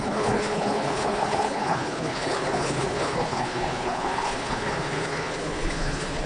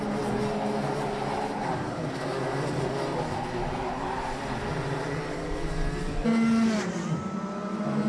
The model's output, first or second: first